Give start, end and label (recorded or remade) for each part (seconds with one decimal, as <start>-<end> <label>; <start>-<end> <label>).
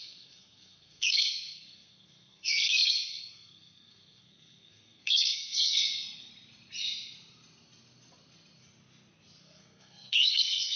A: 0.0-6.3 remade; 6.3-9.4 recorded; 9.4-10.8 remade